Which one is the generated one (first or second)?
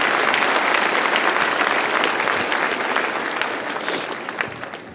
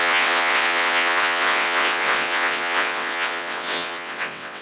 second